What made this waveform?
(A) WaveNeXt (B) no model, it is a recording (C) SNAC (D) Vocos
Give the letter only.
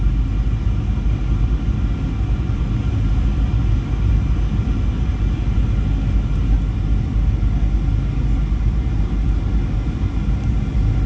B